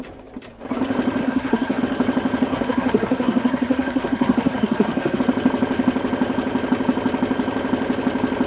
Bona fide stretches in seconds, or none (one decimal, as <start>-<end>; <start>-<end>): 0.0-1.2; 1.8-2.5; 5.2-8.5